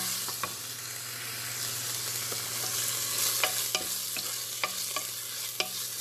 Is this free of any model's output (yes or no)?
yes